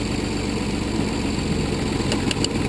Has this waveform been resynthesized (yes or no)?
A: no